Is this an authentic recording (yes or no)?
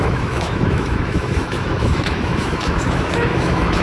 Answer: no